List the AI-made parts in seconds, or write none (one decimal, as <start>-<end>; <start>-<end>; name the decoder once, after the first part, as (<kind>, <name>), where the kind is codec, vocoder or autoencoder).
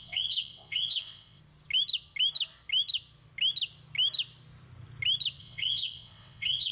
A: 0.0-1.4 (vocoder, WaveNeXt); 5.4-6.7